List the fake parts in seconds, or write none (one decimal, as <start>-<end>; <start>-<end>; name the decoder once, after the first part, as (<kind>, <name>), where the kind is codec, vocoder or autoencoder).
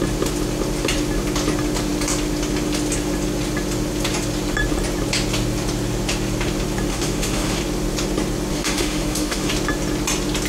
6.9-7.6 (autoencoder, DAC-VAE); 8.5-9.5